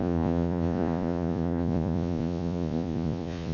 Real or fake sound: fake